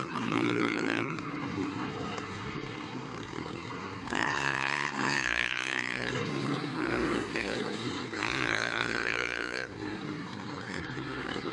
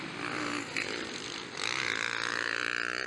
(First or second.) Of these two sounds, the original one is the second